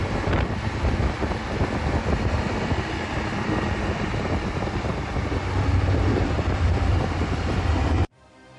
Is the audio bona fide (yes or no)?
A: no